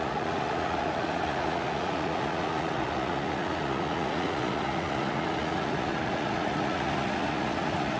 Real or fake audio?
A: fake